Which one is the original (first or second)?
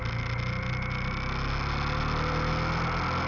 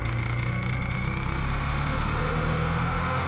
first